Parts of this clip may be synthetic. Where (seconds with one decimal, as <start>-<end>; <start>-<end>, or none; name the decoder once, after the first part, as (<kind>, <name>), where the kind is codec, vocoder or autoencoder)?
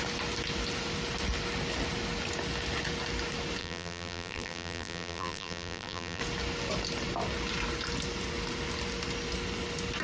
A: 3.6-6.2 (vocoder, BigVGAN v2)